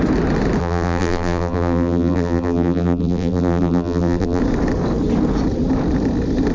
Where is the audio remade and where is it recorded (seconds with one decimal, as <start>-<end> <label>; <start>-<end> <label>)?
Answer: 0.0-0.6 recorded; 0.6-4.4 remade; 4.4-6.5 recorded